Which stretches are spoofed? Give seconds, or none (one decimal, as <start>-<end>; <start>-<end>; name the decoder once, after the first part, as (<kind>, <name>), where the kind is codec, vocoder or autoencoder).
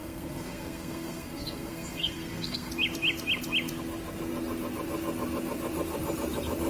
0.0-2.7 (codec, SNAC)